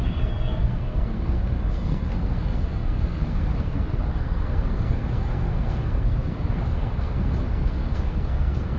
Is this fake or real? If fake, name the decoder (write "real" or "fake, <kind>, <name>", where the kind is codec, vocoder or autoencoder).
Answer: fake, codec, SNAC